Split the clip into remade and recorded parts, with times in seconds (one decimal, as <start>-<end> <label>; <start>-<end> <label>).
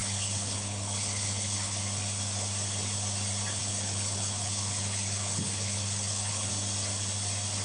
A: 0.0-1.8 remade; 1.8-3.6 recorded; 3.6-6.5 remade; 6.5-7.6 recorded